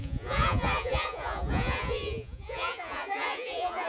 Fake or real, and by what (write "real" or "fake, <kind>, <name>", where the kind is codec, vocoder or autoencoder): fake, vocoder, Vocos